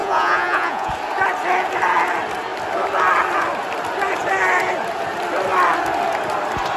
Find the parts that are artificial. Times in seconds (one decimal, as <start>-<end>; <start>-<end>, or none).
0.0-0.9